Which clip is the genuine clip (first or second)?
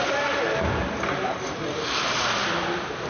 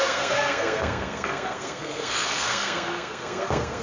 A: first